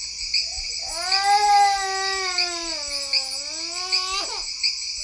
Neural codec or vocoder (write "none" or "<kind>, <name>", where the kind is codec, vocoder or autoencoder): none